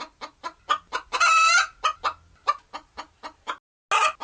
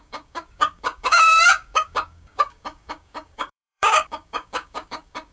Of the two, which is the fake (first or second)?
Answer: second